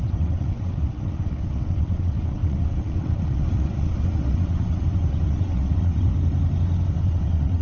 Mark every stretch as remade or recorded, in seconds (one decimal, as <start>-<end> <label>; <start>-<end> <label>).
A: 0.0-6.1 remade; 6.1-7.0 recorded; 7.0-7.6 remade